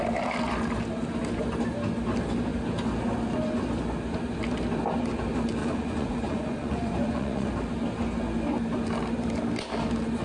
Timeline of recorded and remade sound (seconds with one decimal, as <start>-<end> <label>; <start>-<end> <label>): 0.0-5.6 recorded; 5.6-7.5 remade; 7.5-10.2 recorded